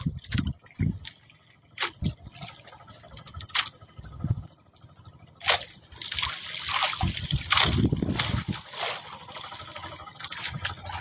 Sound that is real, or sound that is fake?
real